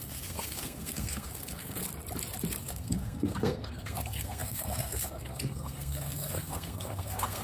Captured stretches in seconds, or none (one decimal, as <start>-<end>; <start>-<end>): 1.8-2.6